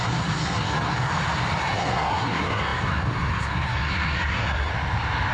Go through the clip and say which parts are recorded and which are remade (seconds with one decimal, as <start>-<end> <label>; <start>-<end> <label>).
0.0-1.1 remade; 1.1-1.6 recorded; 1.6-4.7 remade; 4.7-5.3 recorded